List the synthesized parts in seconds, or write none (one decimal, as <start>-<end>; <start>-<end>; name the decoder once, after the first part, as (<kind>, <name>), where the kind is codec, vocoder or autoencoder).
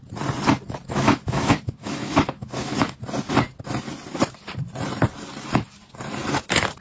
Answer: 0.8-3.0 (autoencoder, DAC-VAE)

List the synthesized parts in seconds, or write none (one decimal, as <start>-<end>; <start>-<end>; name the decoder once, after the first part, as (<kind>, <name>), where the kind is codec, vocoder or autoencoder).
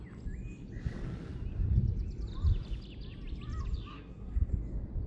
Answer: 3.9-4.5 (codec, SNAC)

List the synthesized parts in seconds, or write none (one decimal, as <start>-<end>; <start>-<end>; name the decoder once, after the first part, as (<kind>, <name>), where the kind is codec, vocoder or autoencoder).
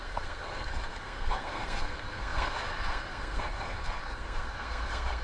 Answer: 0.0-5.2 (codec, SNAC)